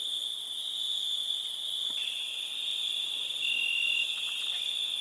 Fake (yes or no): no